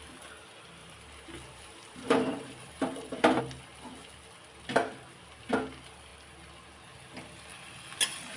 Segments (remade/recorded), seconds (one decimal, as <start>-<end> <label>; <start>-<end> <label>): 0.0-0.8 recorded; 0.8-3.4 remade; 3.4-8.4 recorded